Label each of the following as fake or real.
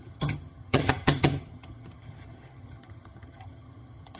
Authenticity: fake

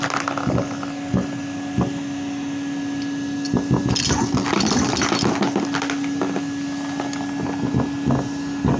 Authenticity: real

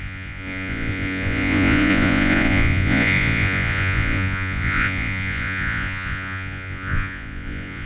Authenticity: fake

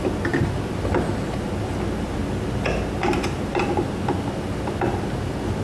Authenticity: real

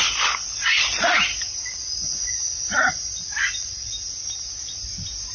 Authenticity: real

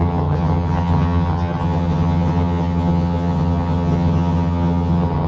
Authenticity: fake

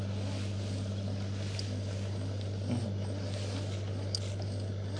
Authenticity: real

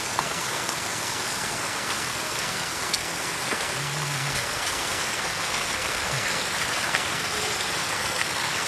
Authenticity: fake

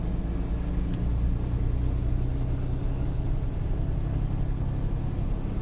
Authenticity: real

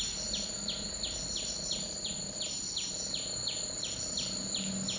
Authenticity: real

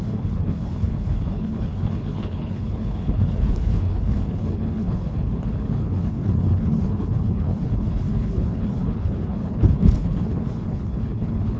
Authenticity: fake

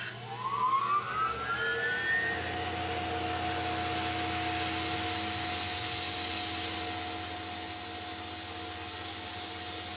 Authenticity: real